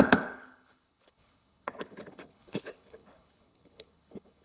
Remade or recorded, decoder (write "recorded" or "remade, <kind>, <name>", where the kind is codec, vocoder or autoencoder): remade, codec, HILCodec